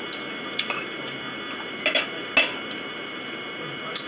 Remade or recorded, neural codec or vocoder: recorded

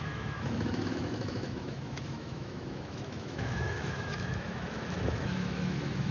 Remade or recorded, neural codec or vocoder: remade, autoencoder, DAC-VAE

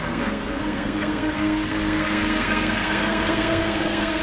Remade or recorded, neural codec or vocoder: remade, codec, SNAC